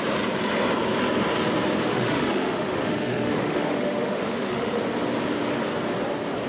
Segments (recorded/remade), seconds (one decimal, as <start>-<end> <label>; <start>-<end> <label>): 0.0-1.9 recorded; 1.9-4.8 remade; 4.8-6.5 recorded